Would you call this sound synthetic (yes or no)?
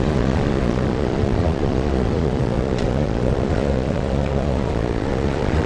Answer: yes